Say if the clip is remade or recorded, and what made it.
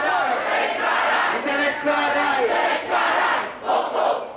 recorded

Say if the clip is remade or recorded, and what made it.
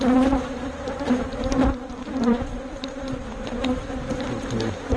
remade, vocoder, BigVGAN v2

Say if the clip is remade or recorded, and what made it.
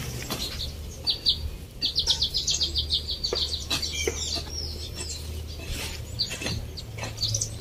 recorded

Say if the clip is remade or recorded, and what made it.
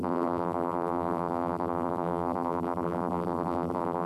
remade, vocoder, BigVGAN v2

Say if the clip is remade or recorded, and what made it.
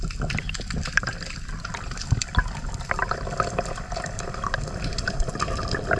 recorded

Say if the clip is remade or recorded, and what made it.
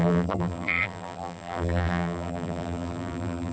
remade, vocoder, BigVGAN v2